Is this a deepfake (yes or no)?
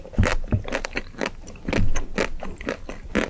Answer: no